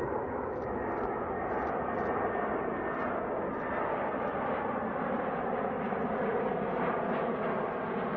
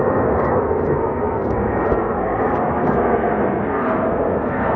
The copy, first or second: second